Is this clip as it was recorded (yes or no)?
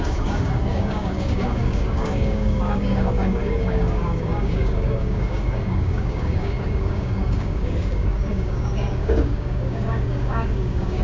no